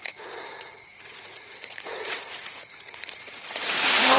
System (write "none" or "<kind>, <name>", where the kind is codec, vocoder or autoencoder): vocoder, Vocos